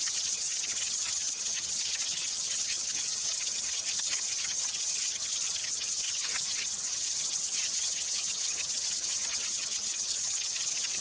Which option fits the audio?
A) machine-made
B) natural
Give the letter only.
A